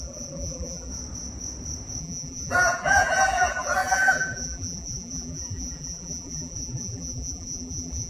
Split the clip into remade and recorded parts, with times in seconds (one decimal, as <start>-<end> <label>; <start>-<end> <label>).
0.0-0.9 remade; 0.9-2.0 recorded; 2.0-8.1 remade